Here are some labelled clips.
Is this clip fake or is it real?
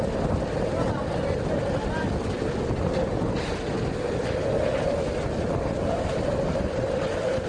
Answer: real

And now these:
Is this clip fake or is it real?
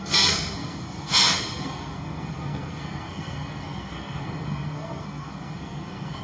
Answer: fake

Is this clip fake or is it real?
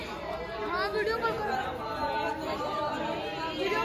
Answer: real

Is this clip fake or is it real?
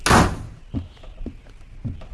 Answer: real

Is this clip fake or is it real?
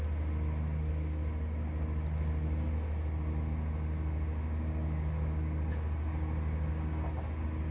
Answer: real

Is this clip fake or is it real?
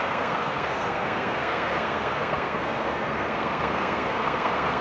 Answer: fake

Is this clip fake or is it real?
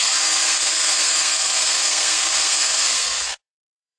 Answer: fake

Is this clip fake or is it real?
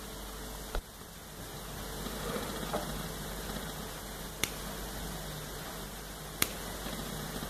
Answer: real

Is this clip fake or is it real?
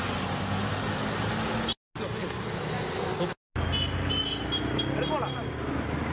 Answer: real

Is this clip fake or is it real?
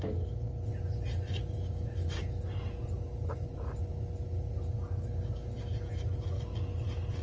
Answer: real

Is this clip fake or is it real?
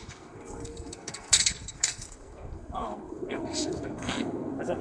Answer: fake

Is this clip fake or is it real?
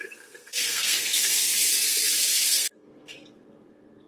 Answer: fake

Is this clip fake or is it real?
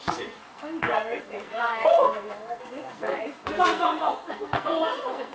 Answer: fake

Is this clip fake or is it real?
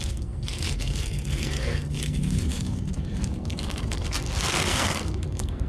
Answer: fake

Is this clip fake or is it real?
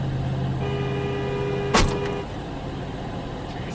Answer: real